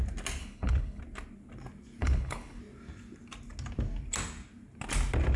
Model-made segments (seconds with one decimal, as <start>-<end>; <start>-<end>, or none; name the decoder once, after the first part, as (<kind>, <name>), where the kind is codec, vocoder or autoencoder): 0.4-1.0 (codec, HILCodec); 2.0-2.6